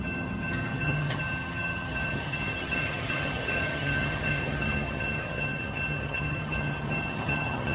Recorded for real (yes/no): no